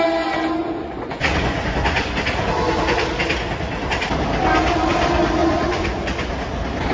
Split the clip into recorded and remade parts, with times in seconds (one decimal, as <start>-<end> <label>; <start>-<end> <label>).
0.0-0.6 recorded; 0.6-2.2 remade; 2.2-5.4 recorded; 5.4-6.3 remade; 6.3-6.9 recorded